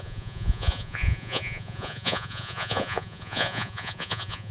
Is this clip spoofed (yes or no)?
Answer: yes